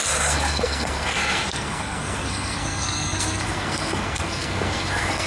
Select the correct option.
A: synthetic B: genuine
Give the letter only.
A